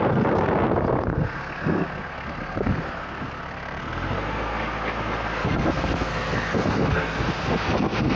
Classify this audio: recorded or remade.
remade